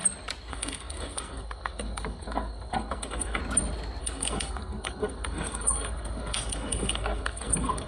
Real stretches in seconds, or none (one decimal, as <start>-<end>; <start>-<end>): 0.0-0.5; 3.4-4.0